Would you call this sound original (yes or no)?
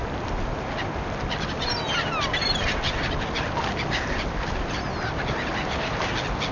yes